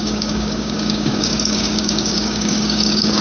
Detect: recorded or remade remade